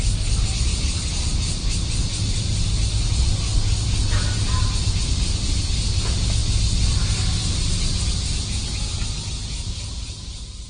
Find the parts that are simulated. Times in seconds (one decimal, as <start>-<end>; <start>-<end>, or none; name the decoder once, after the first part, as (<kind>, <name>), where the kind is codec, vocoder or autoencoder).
none